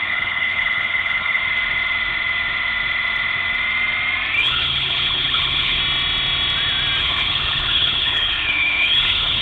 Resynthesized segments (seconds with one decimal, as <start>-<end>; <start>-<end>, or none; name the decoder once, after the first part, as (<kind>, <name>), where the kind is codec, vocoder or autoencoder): 0.0-1.4 (codec, HILCodec); 4.4-5.8; 7.0-9.4